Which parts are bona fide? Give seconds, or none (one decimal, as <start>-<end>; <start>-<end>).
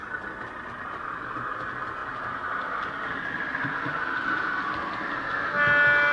0.0-2.0; 2.6-6.1